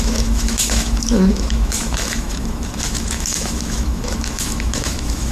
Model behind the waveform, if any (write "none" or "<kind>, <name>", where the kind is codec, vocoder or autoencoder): autoencoder, DAC-VAE